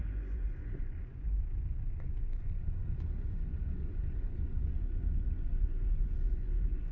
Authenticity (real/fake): fake